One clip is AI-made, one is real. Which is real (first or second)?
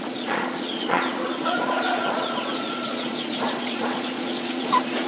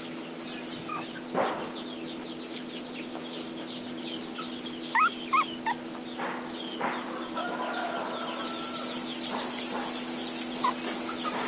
second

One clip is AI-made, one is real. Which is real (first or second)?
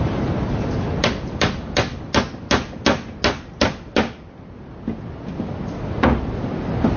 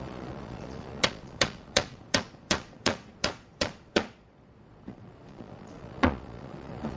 first